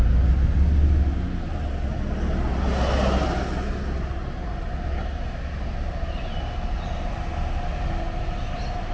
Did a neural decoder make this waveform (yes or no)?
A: no